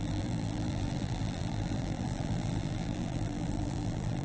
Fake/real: fake